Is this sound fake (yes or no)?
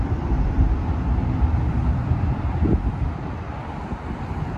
yes